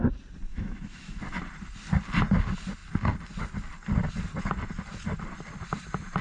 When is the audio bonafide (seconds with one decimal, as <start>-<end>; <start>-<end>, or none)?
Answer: 0.0-0.5; 1.2-6.2